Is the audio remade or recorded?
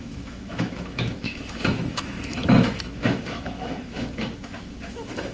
remade